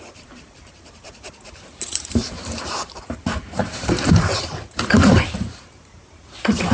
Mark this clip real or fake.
fake